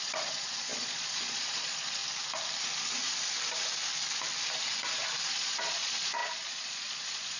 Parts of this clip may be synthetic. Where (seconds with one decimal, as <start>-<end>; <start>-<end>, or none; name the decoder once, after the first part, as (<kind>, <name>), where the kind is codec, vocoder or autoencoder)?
0.0-2.0 (vocoder, Vocos); 5.3-7.4